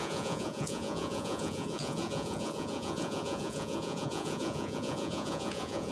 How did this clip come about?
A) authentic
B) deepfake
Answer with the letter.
B